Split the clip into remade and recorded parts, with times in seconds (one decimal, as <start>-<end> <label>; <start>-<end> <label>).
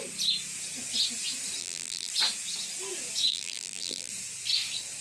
0.0-1.6 recorded; 1.6-2.1 remade; 2.1-3.3 recorded; 3.3-4.1 remade; 4.1-5.0 recorded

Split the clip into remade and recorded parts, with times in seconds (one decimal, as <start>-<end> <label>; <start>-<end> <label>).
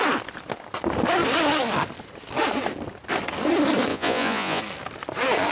0.0-3.9 recorded; 3.9-4.6 remade; 4.6-5.5 recorded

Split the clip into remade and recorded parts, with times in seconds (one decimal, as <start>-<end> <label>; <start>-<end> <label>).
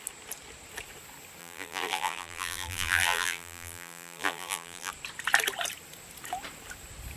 0.0-1.4 recorded; 1.4-4.9 remade; 4.9-7.2 recorded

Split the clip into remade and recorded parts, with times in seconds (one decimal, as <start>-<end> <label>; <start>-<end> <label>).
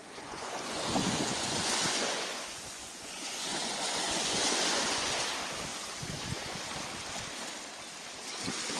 0.0-5.1 remade; 5.1-5.7 recorded; 5.7-6.6 remade; 6.6-8.8 recorded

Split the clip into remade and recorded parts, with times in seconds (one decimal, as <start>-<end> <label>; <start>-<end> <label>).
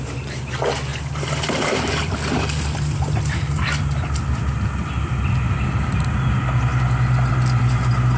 0.0-8.2 recorded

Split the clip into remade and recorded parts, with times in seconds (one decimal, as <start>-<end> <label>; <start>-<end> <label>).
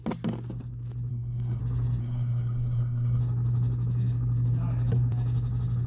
0.0-1.1 recorded; 1.1-1.6 remade; 1.6-2.0 recorded; 2.0-3.2 remade; 3.2-5.9 recorded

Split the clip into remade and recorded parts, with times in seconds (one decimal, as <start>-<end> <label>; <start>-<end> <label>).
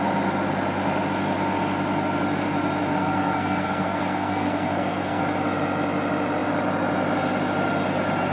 0.0-2.9 recorded; 2.9-5.2 remade; 5.2-8.3 recorded